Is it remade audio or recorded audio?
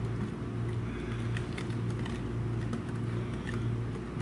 recorded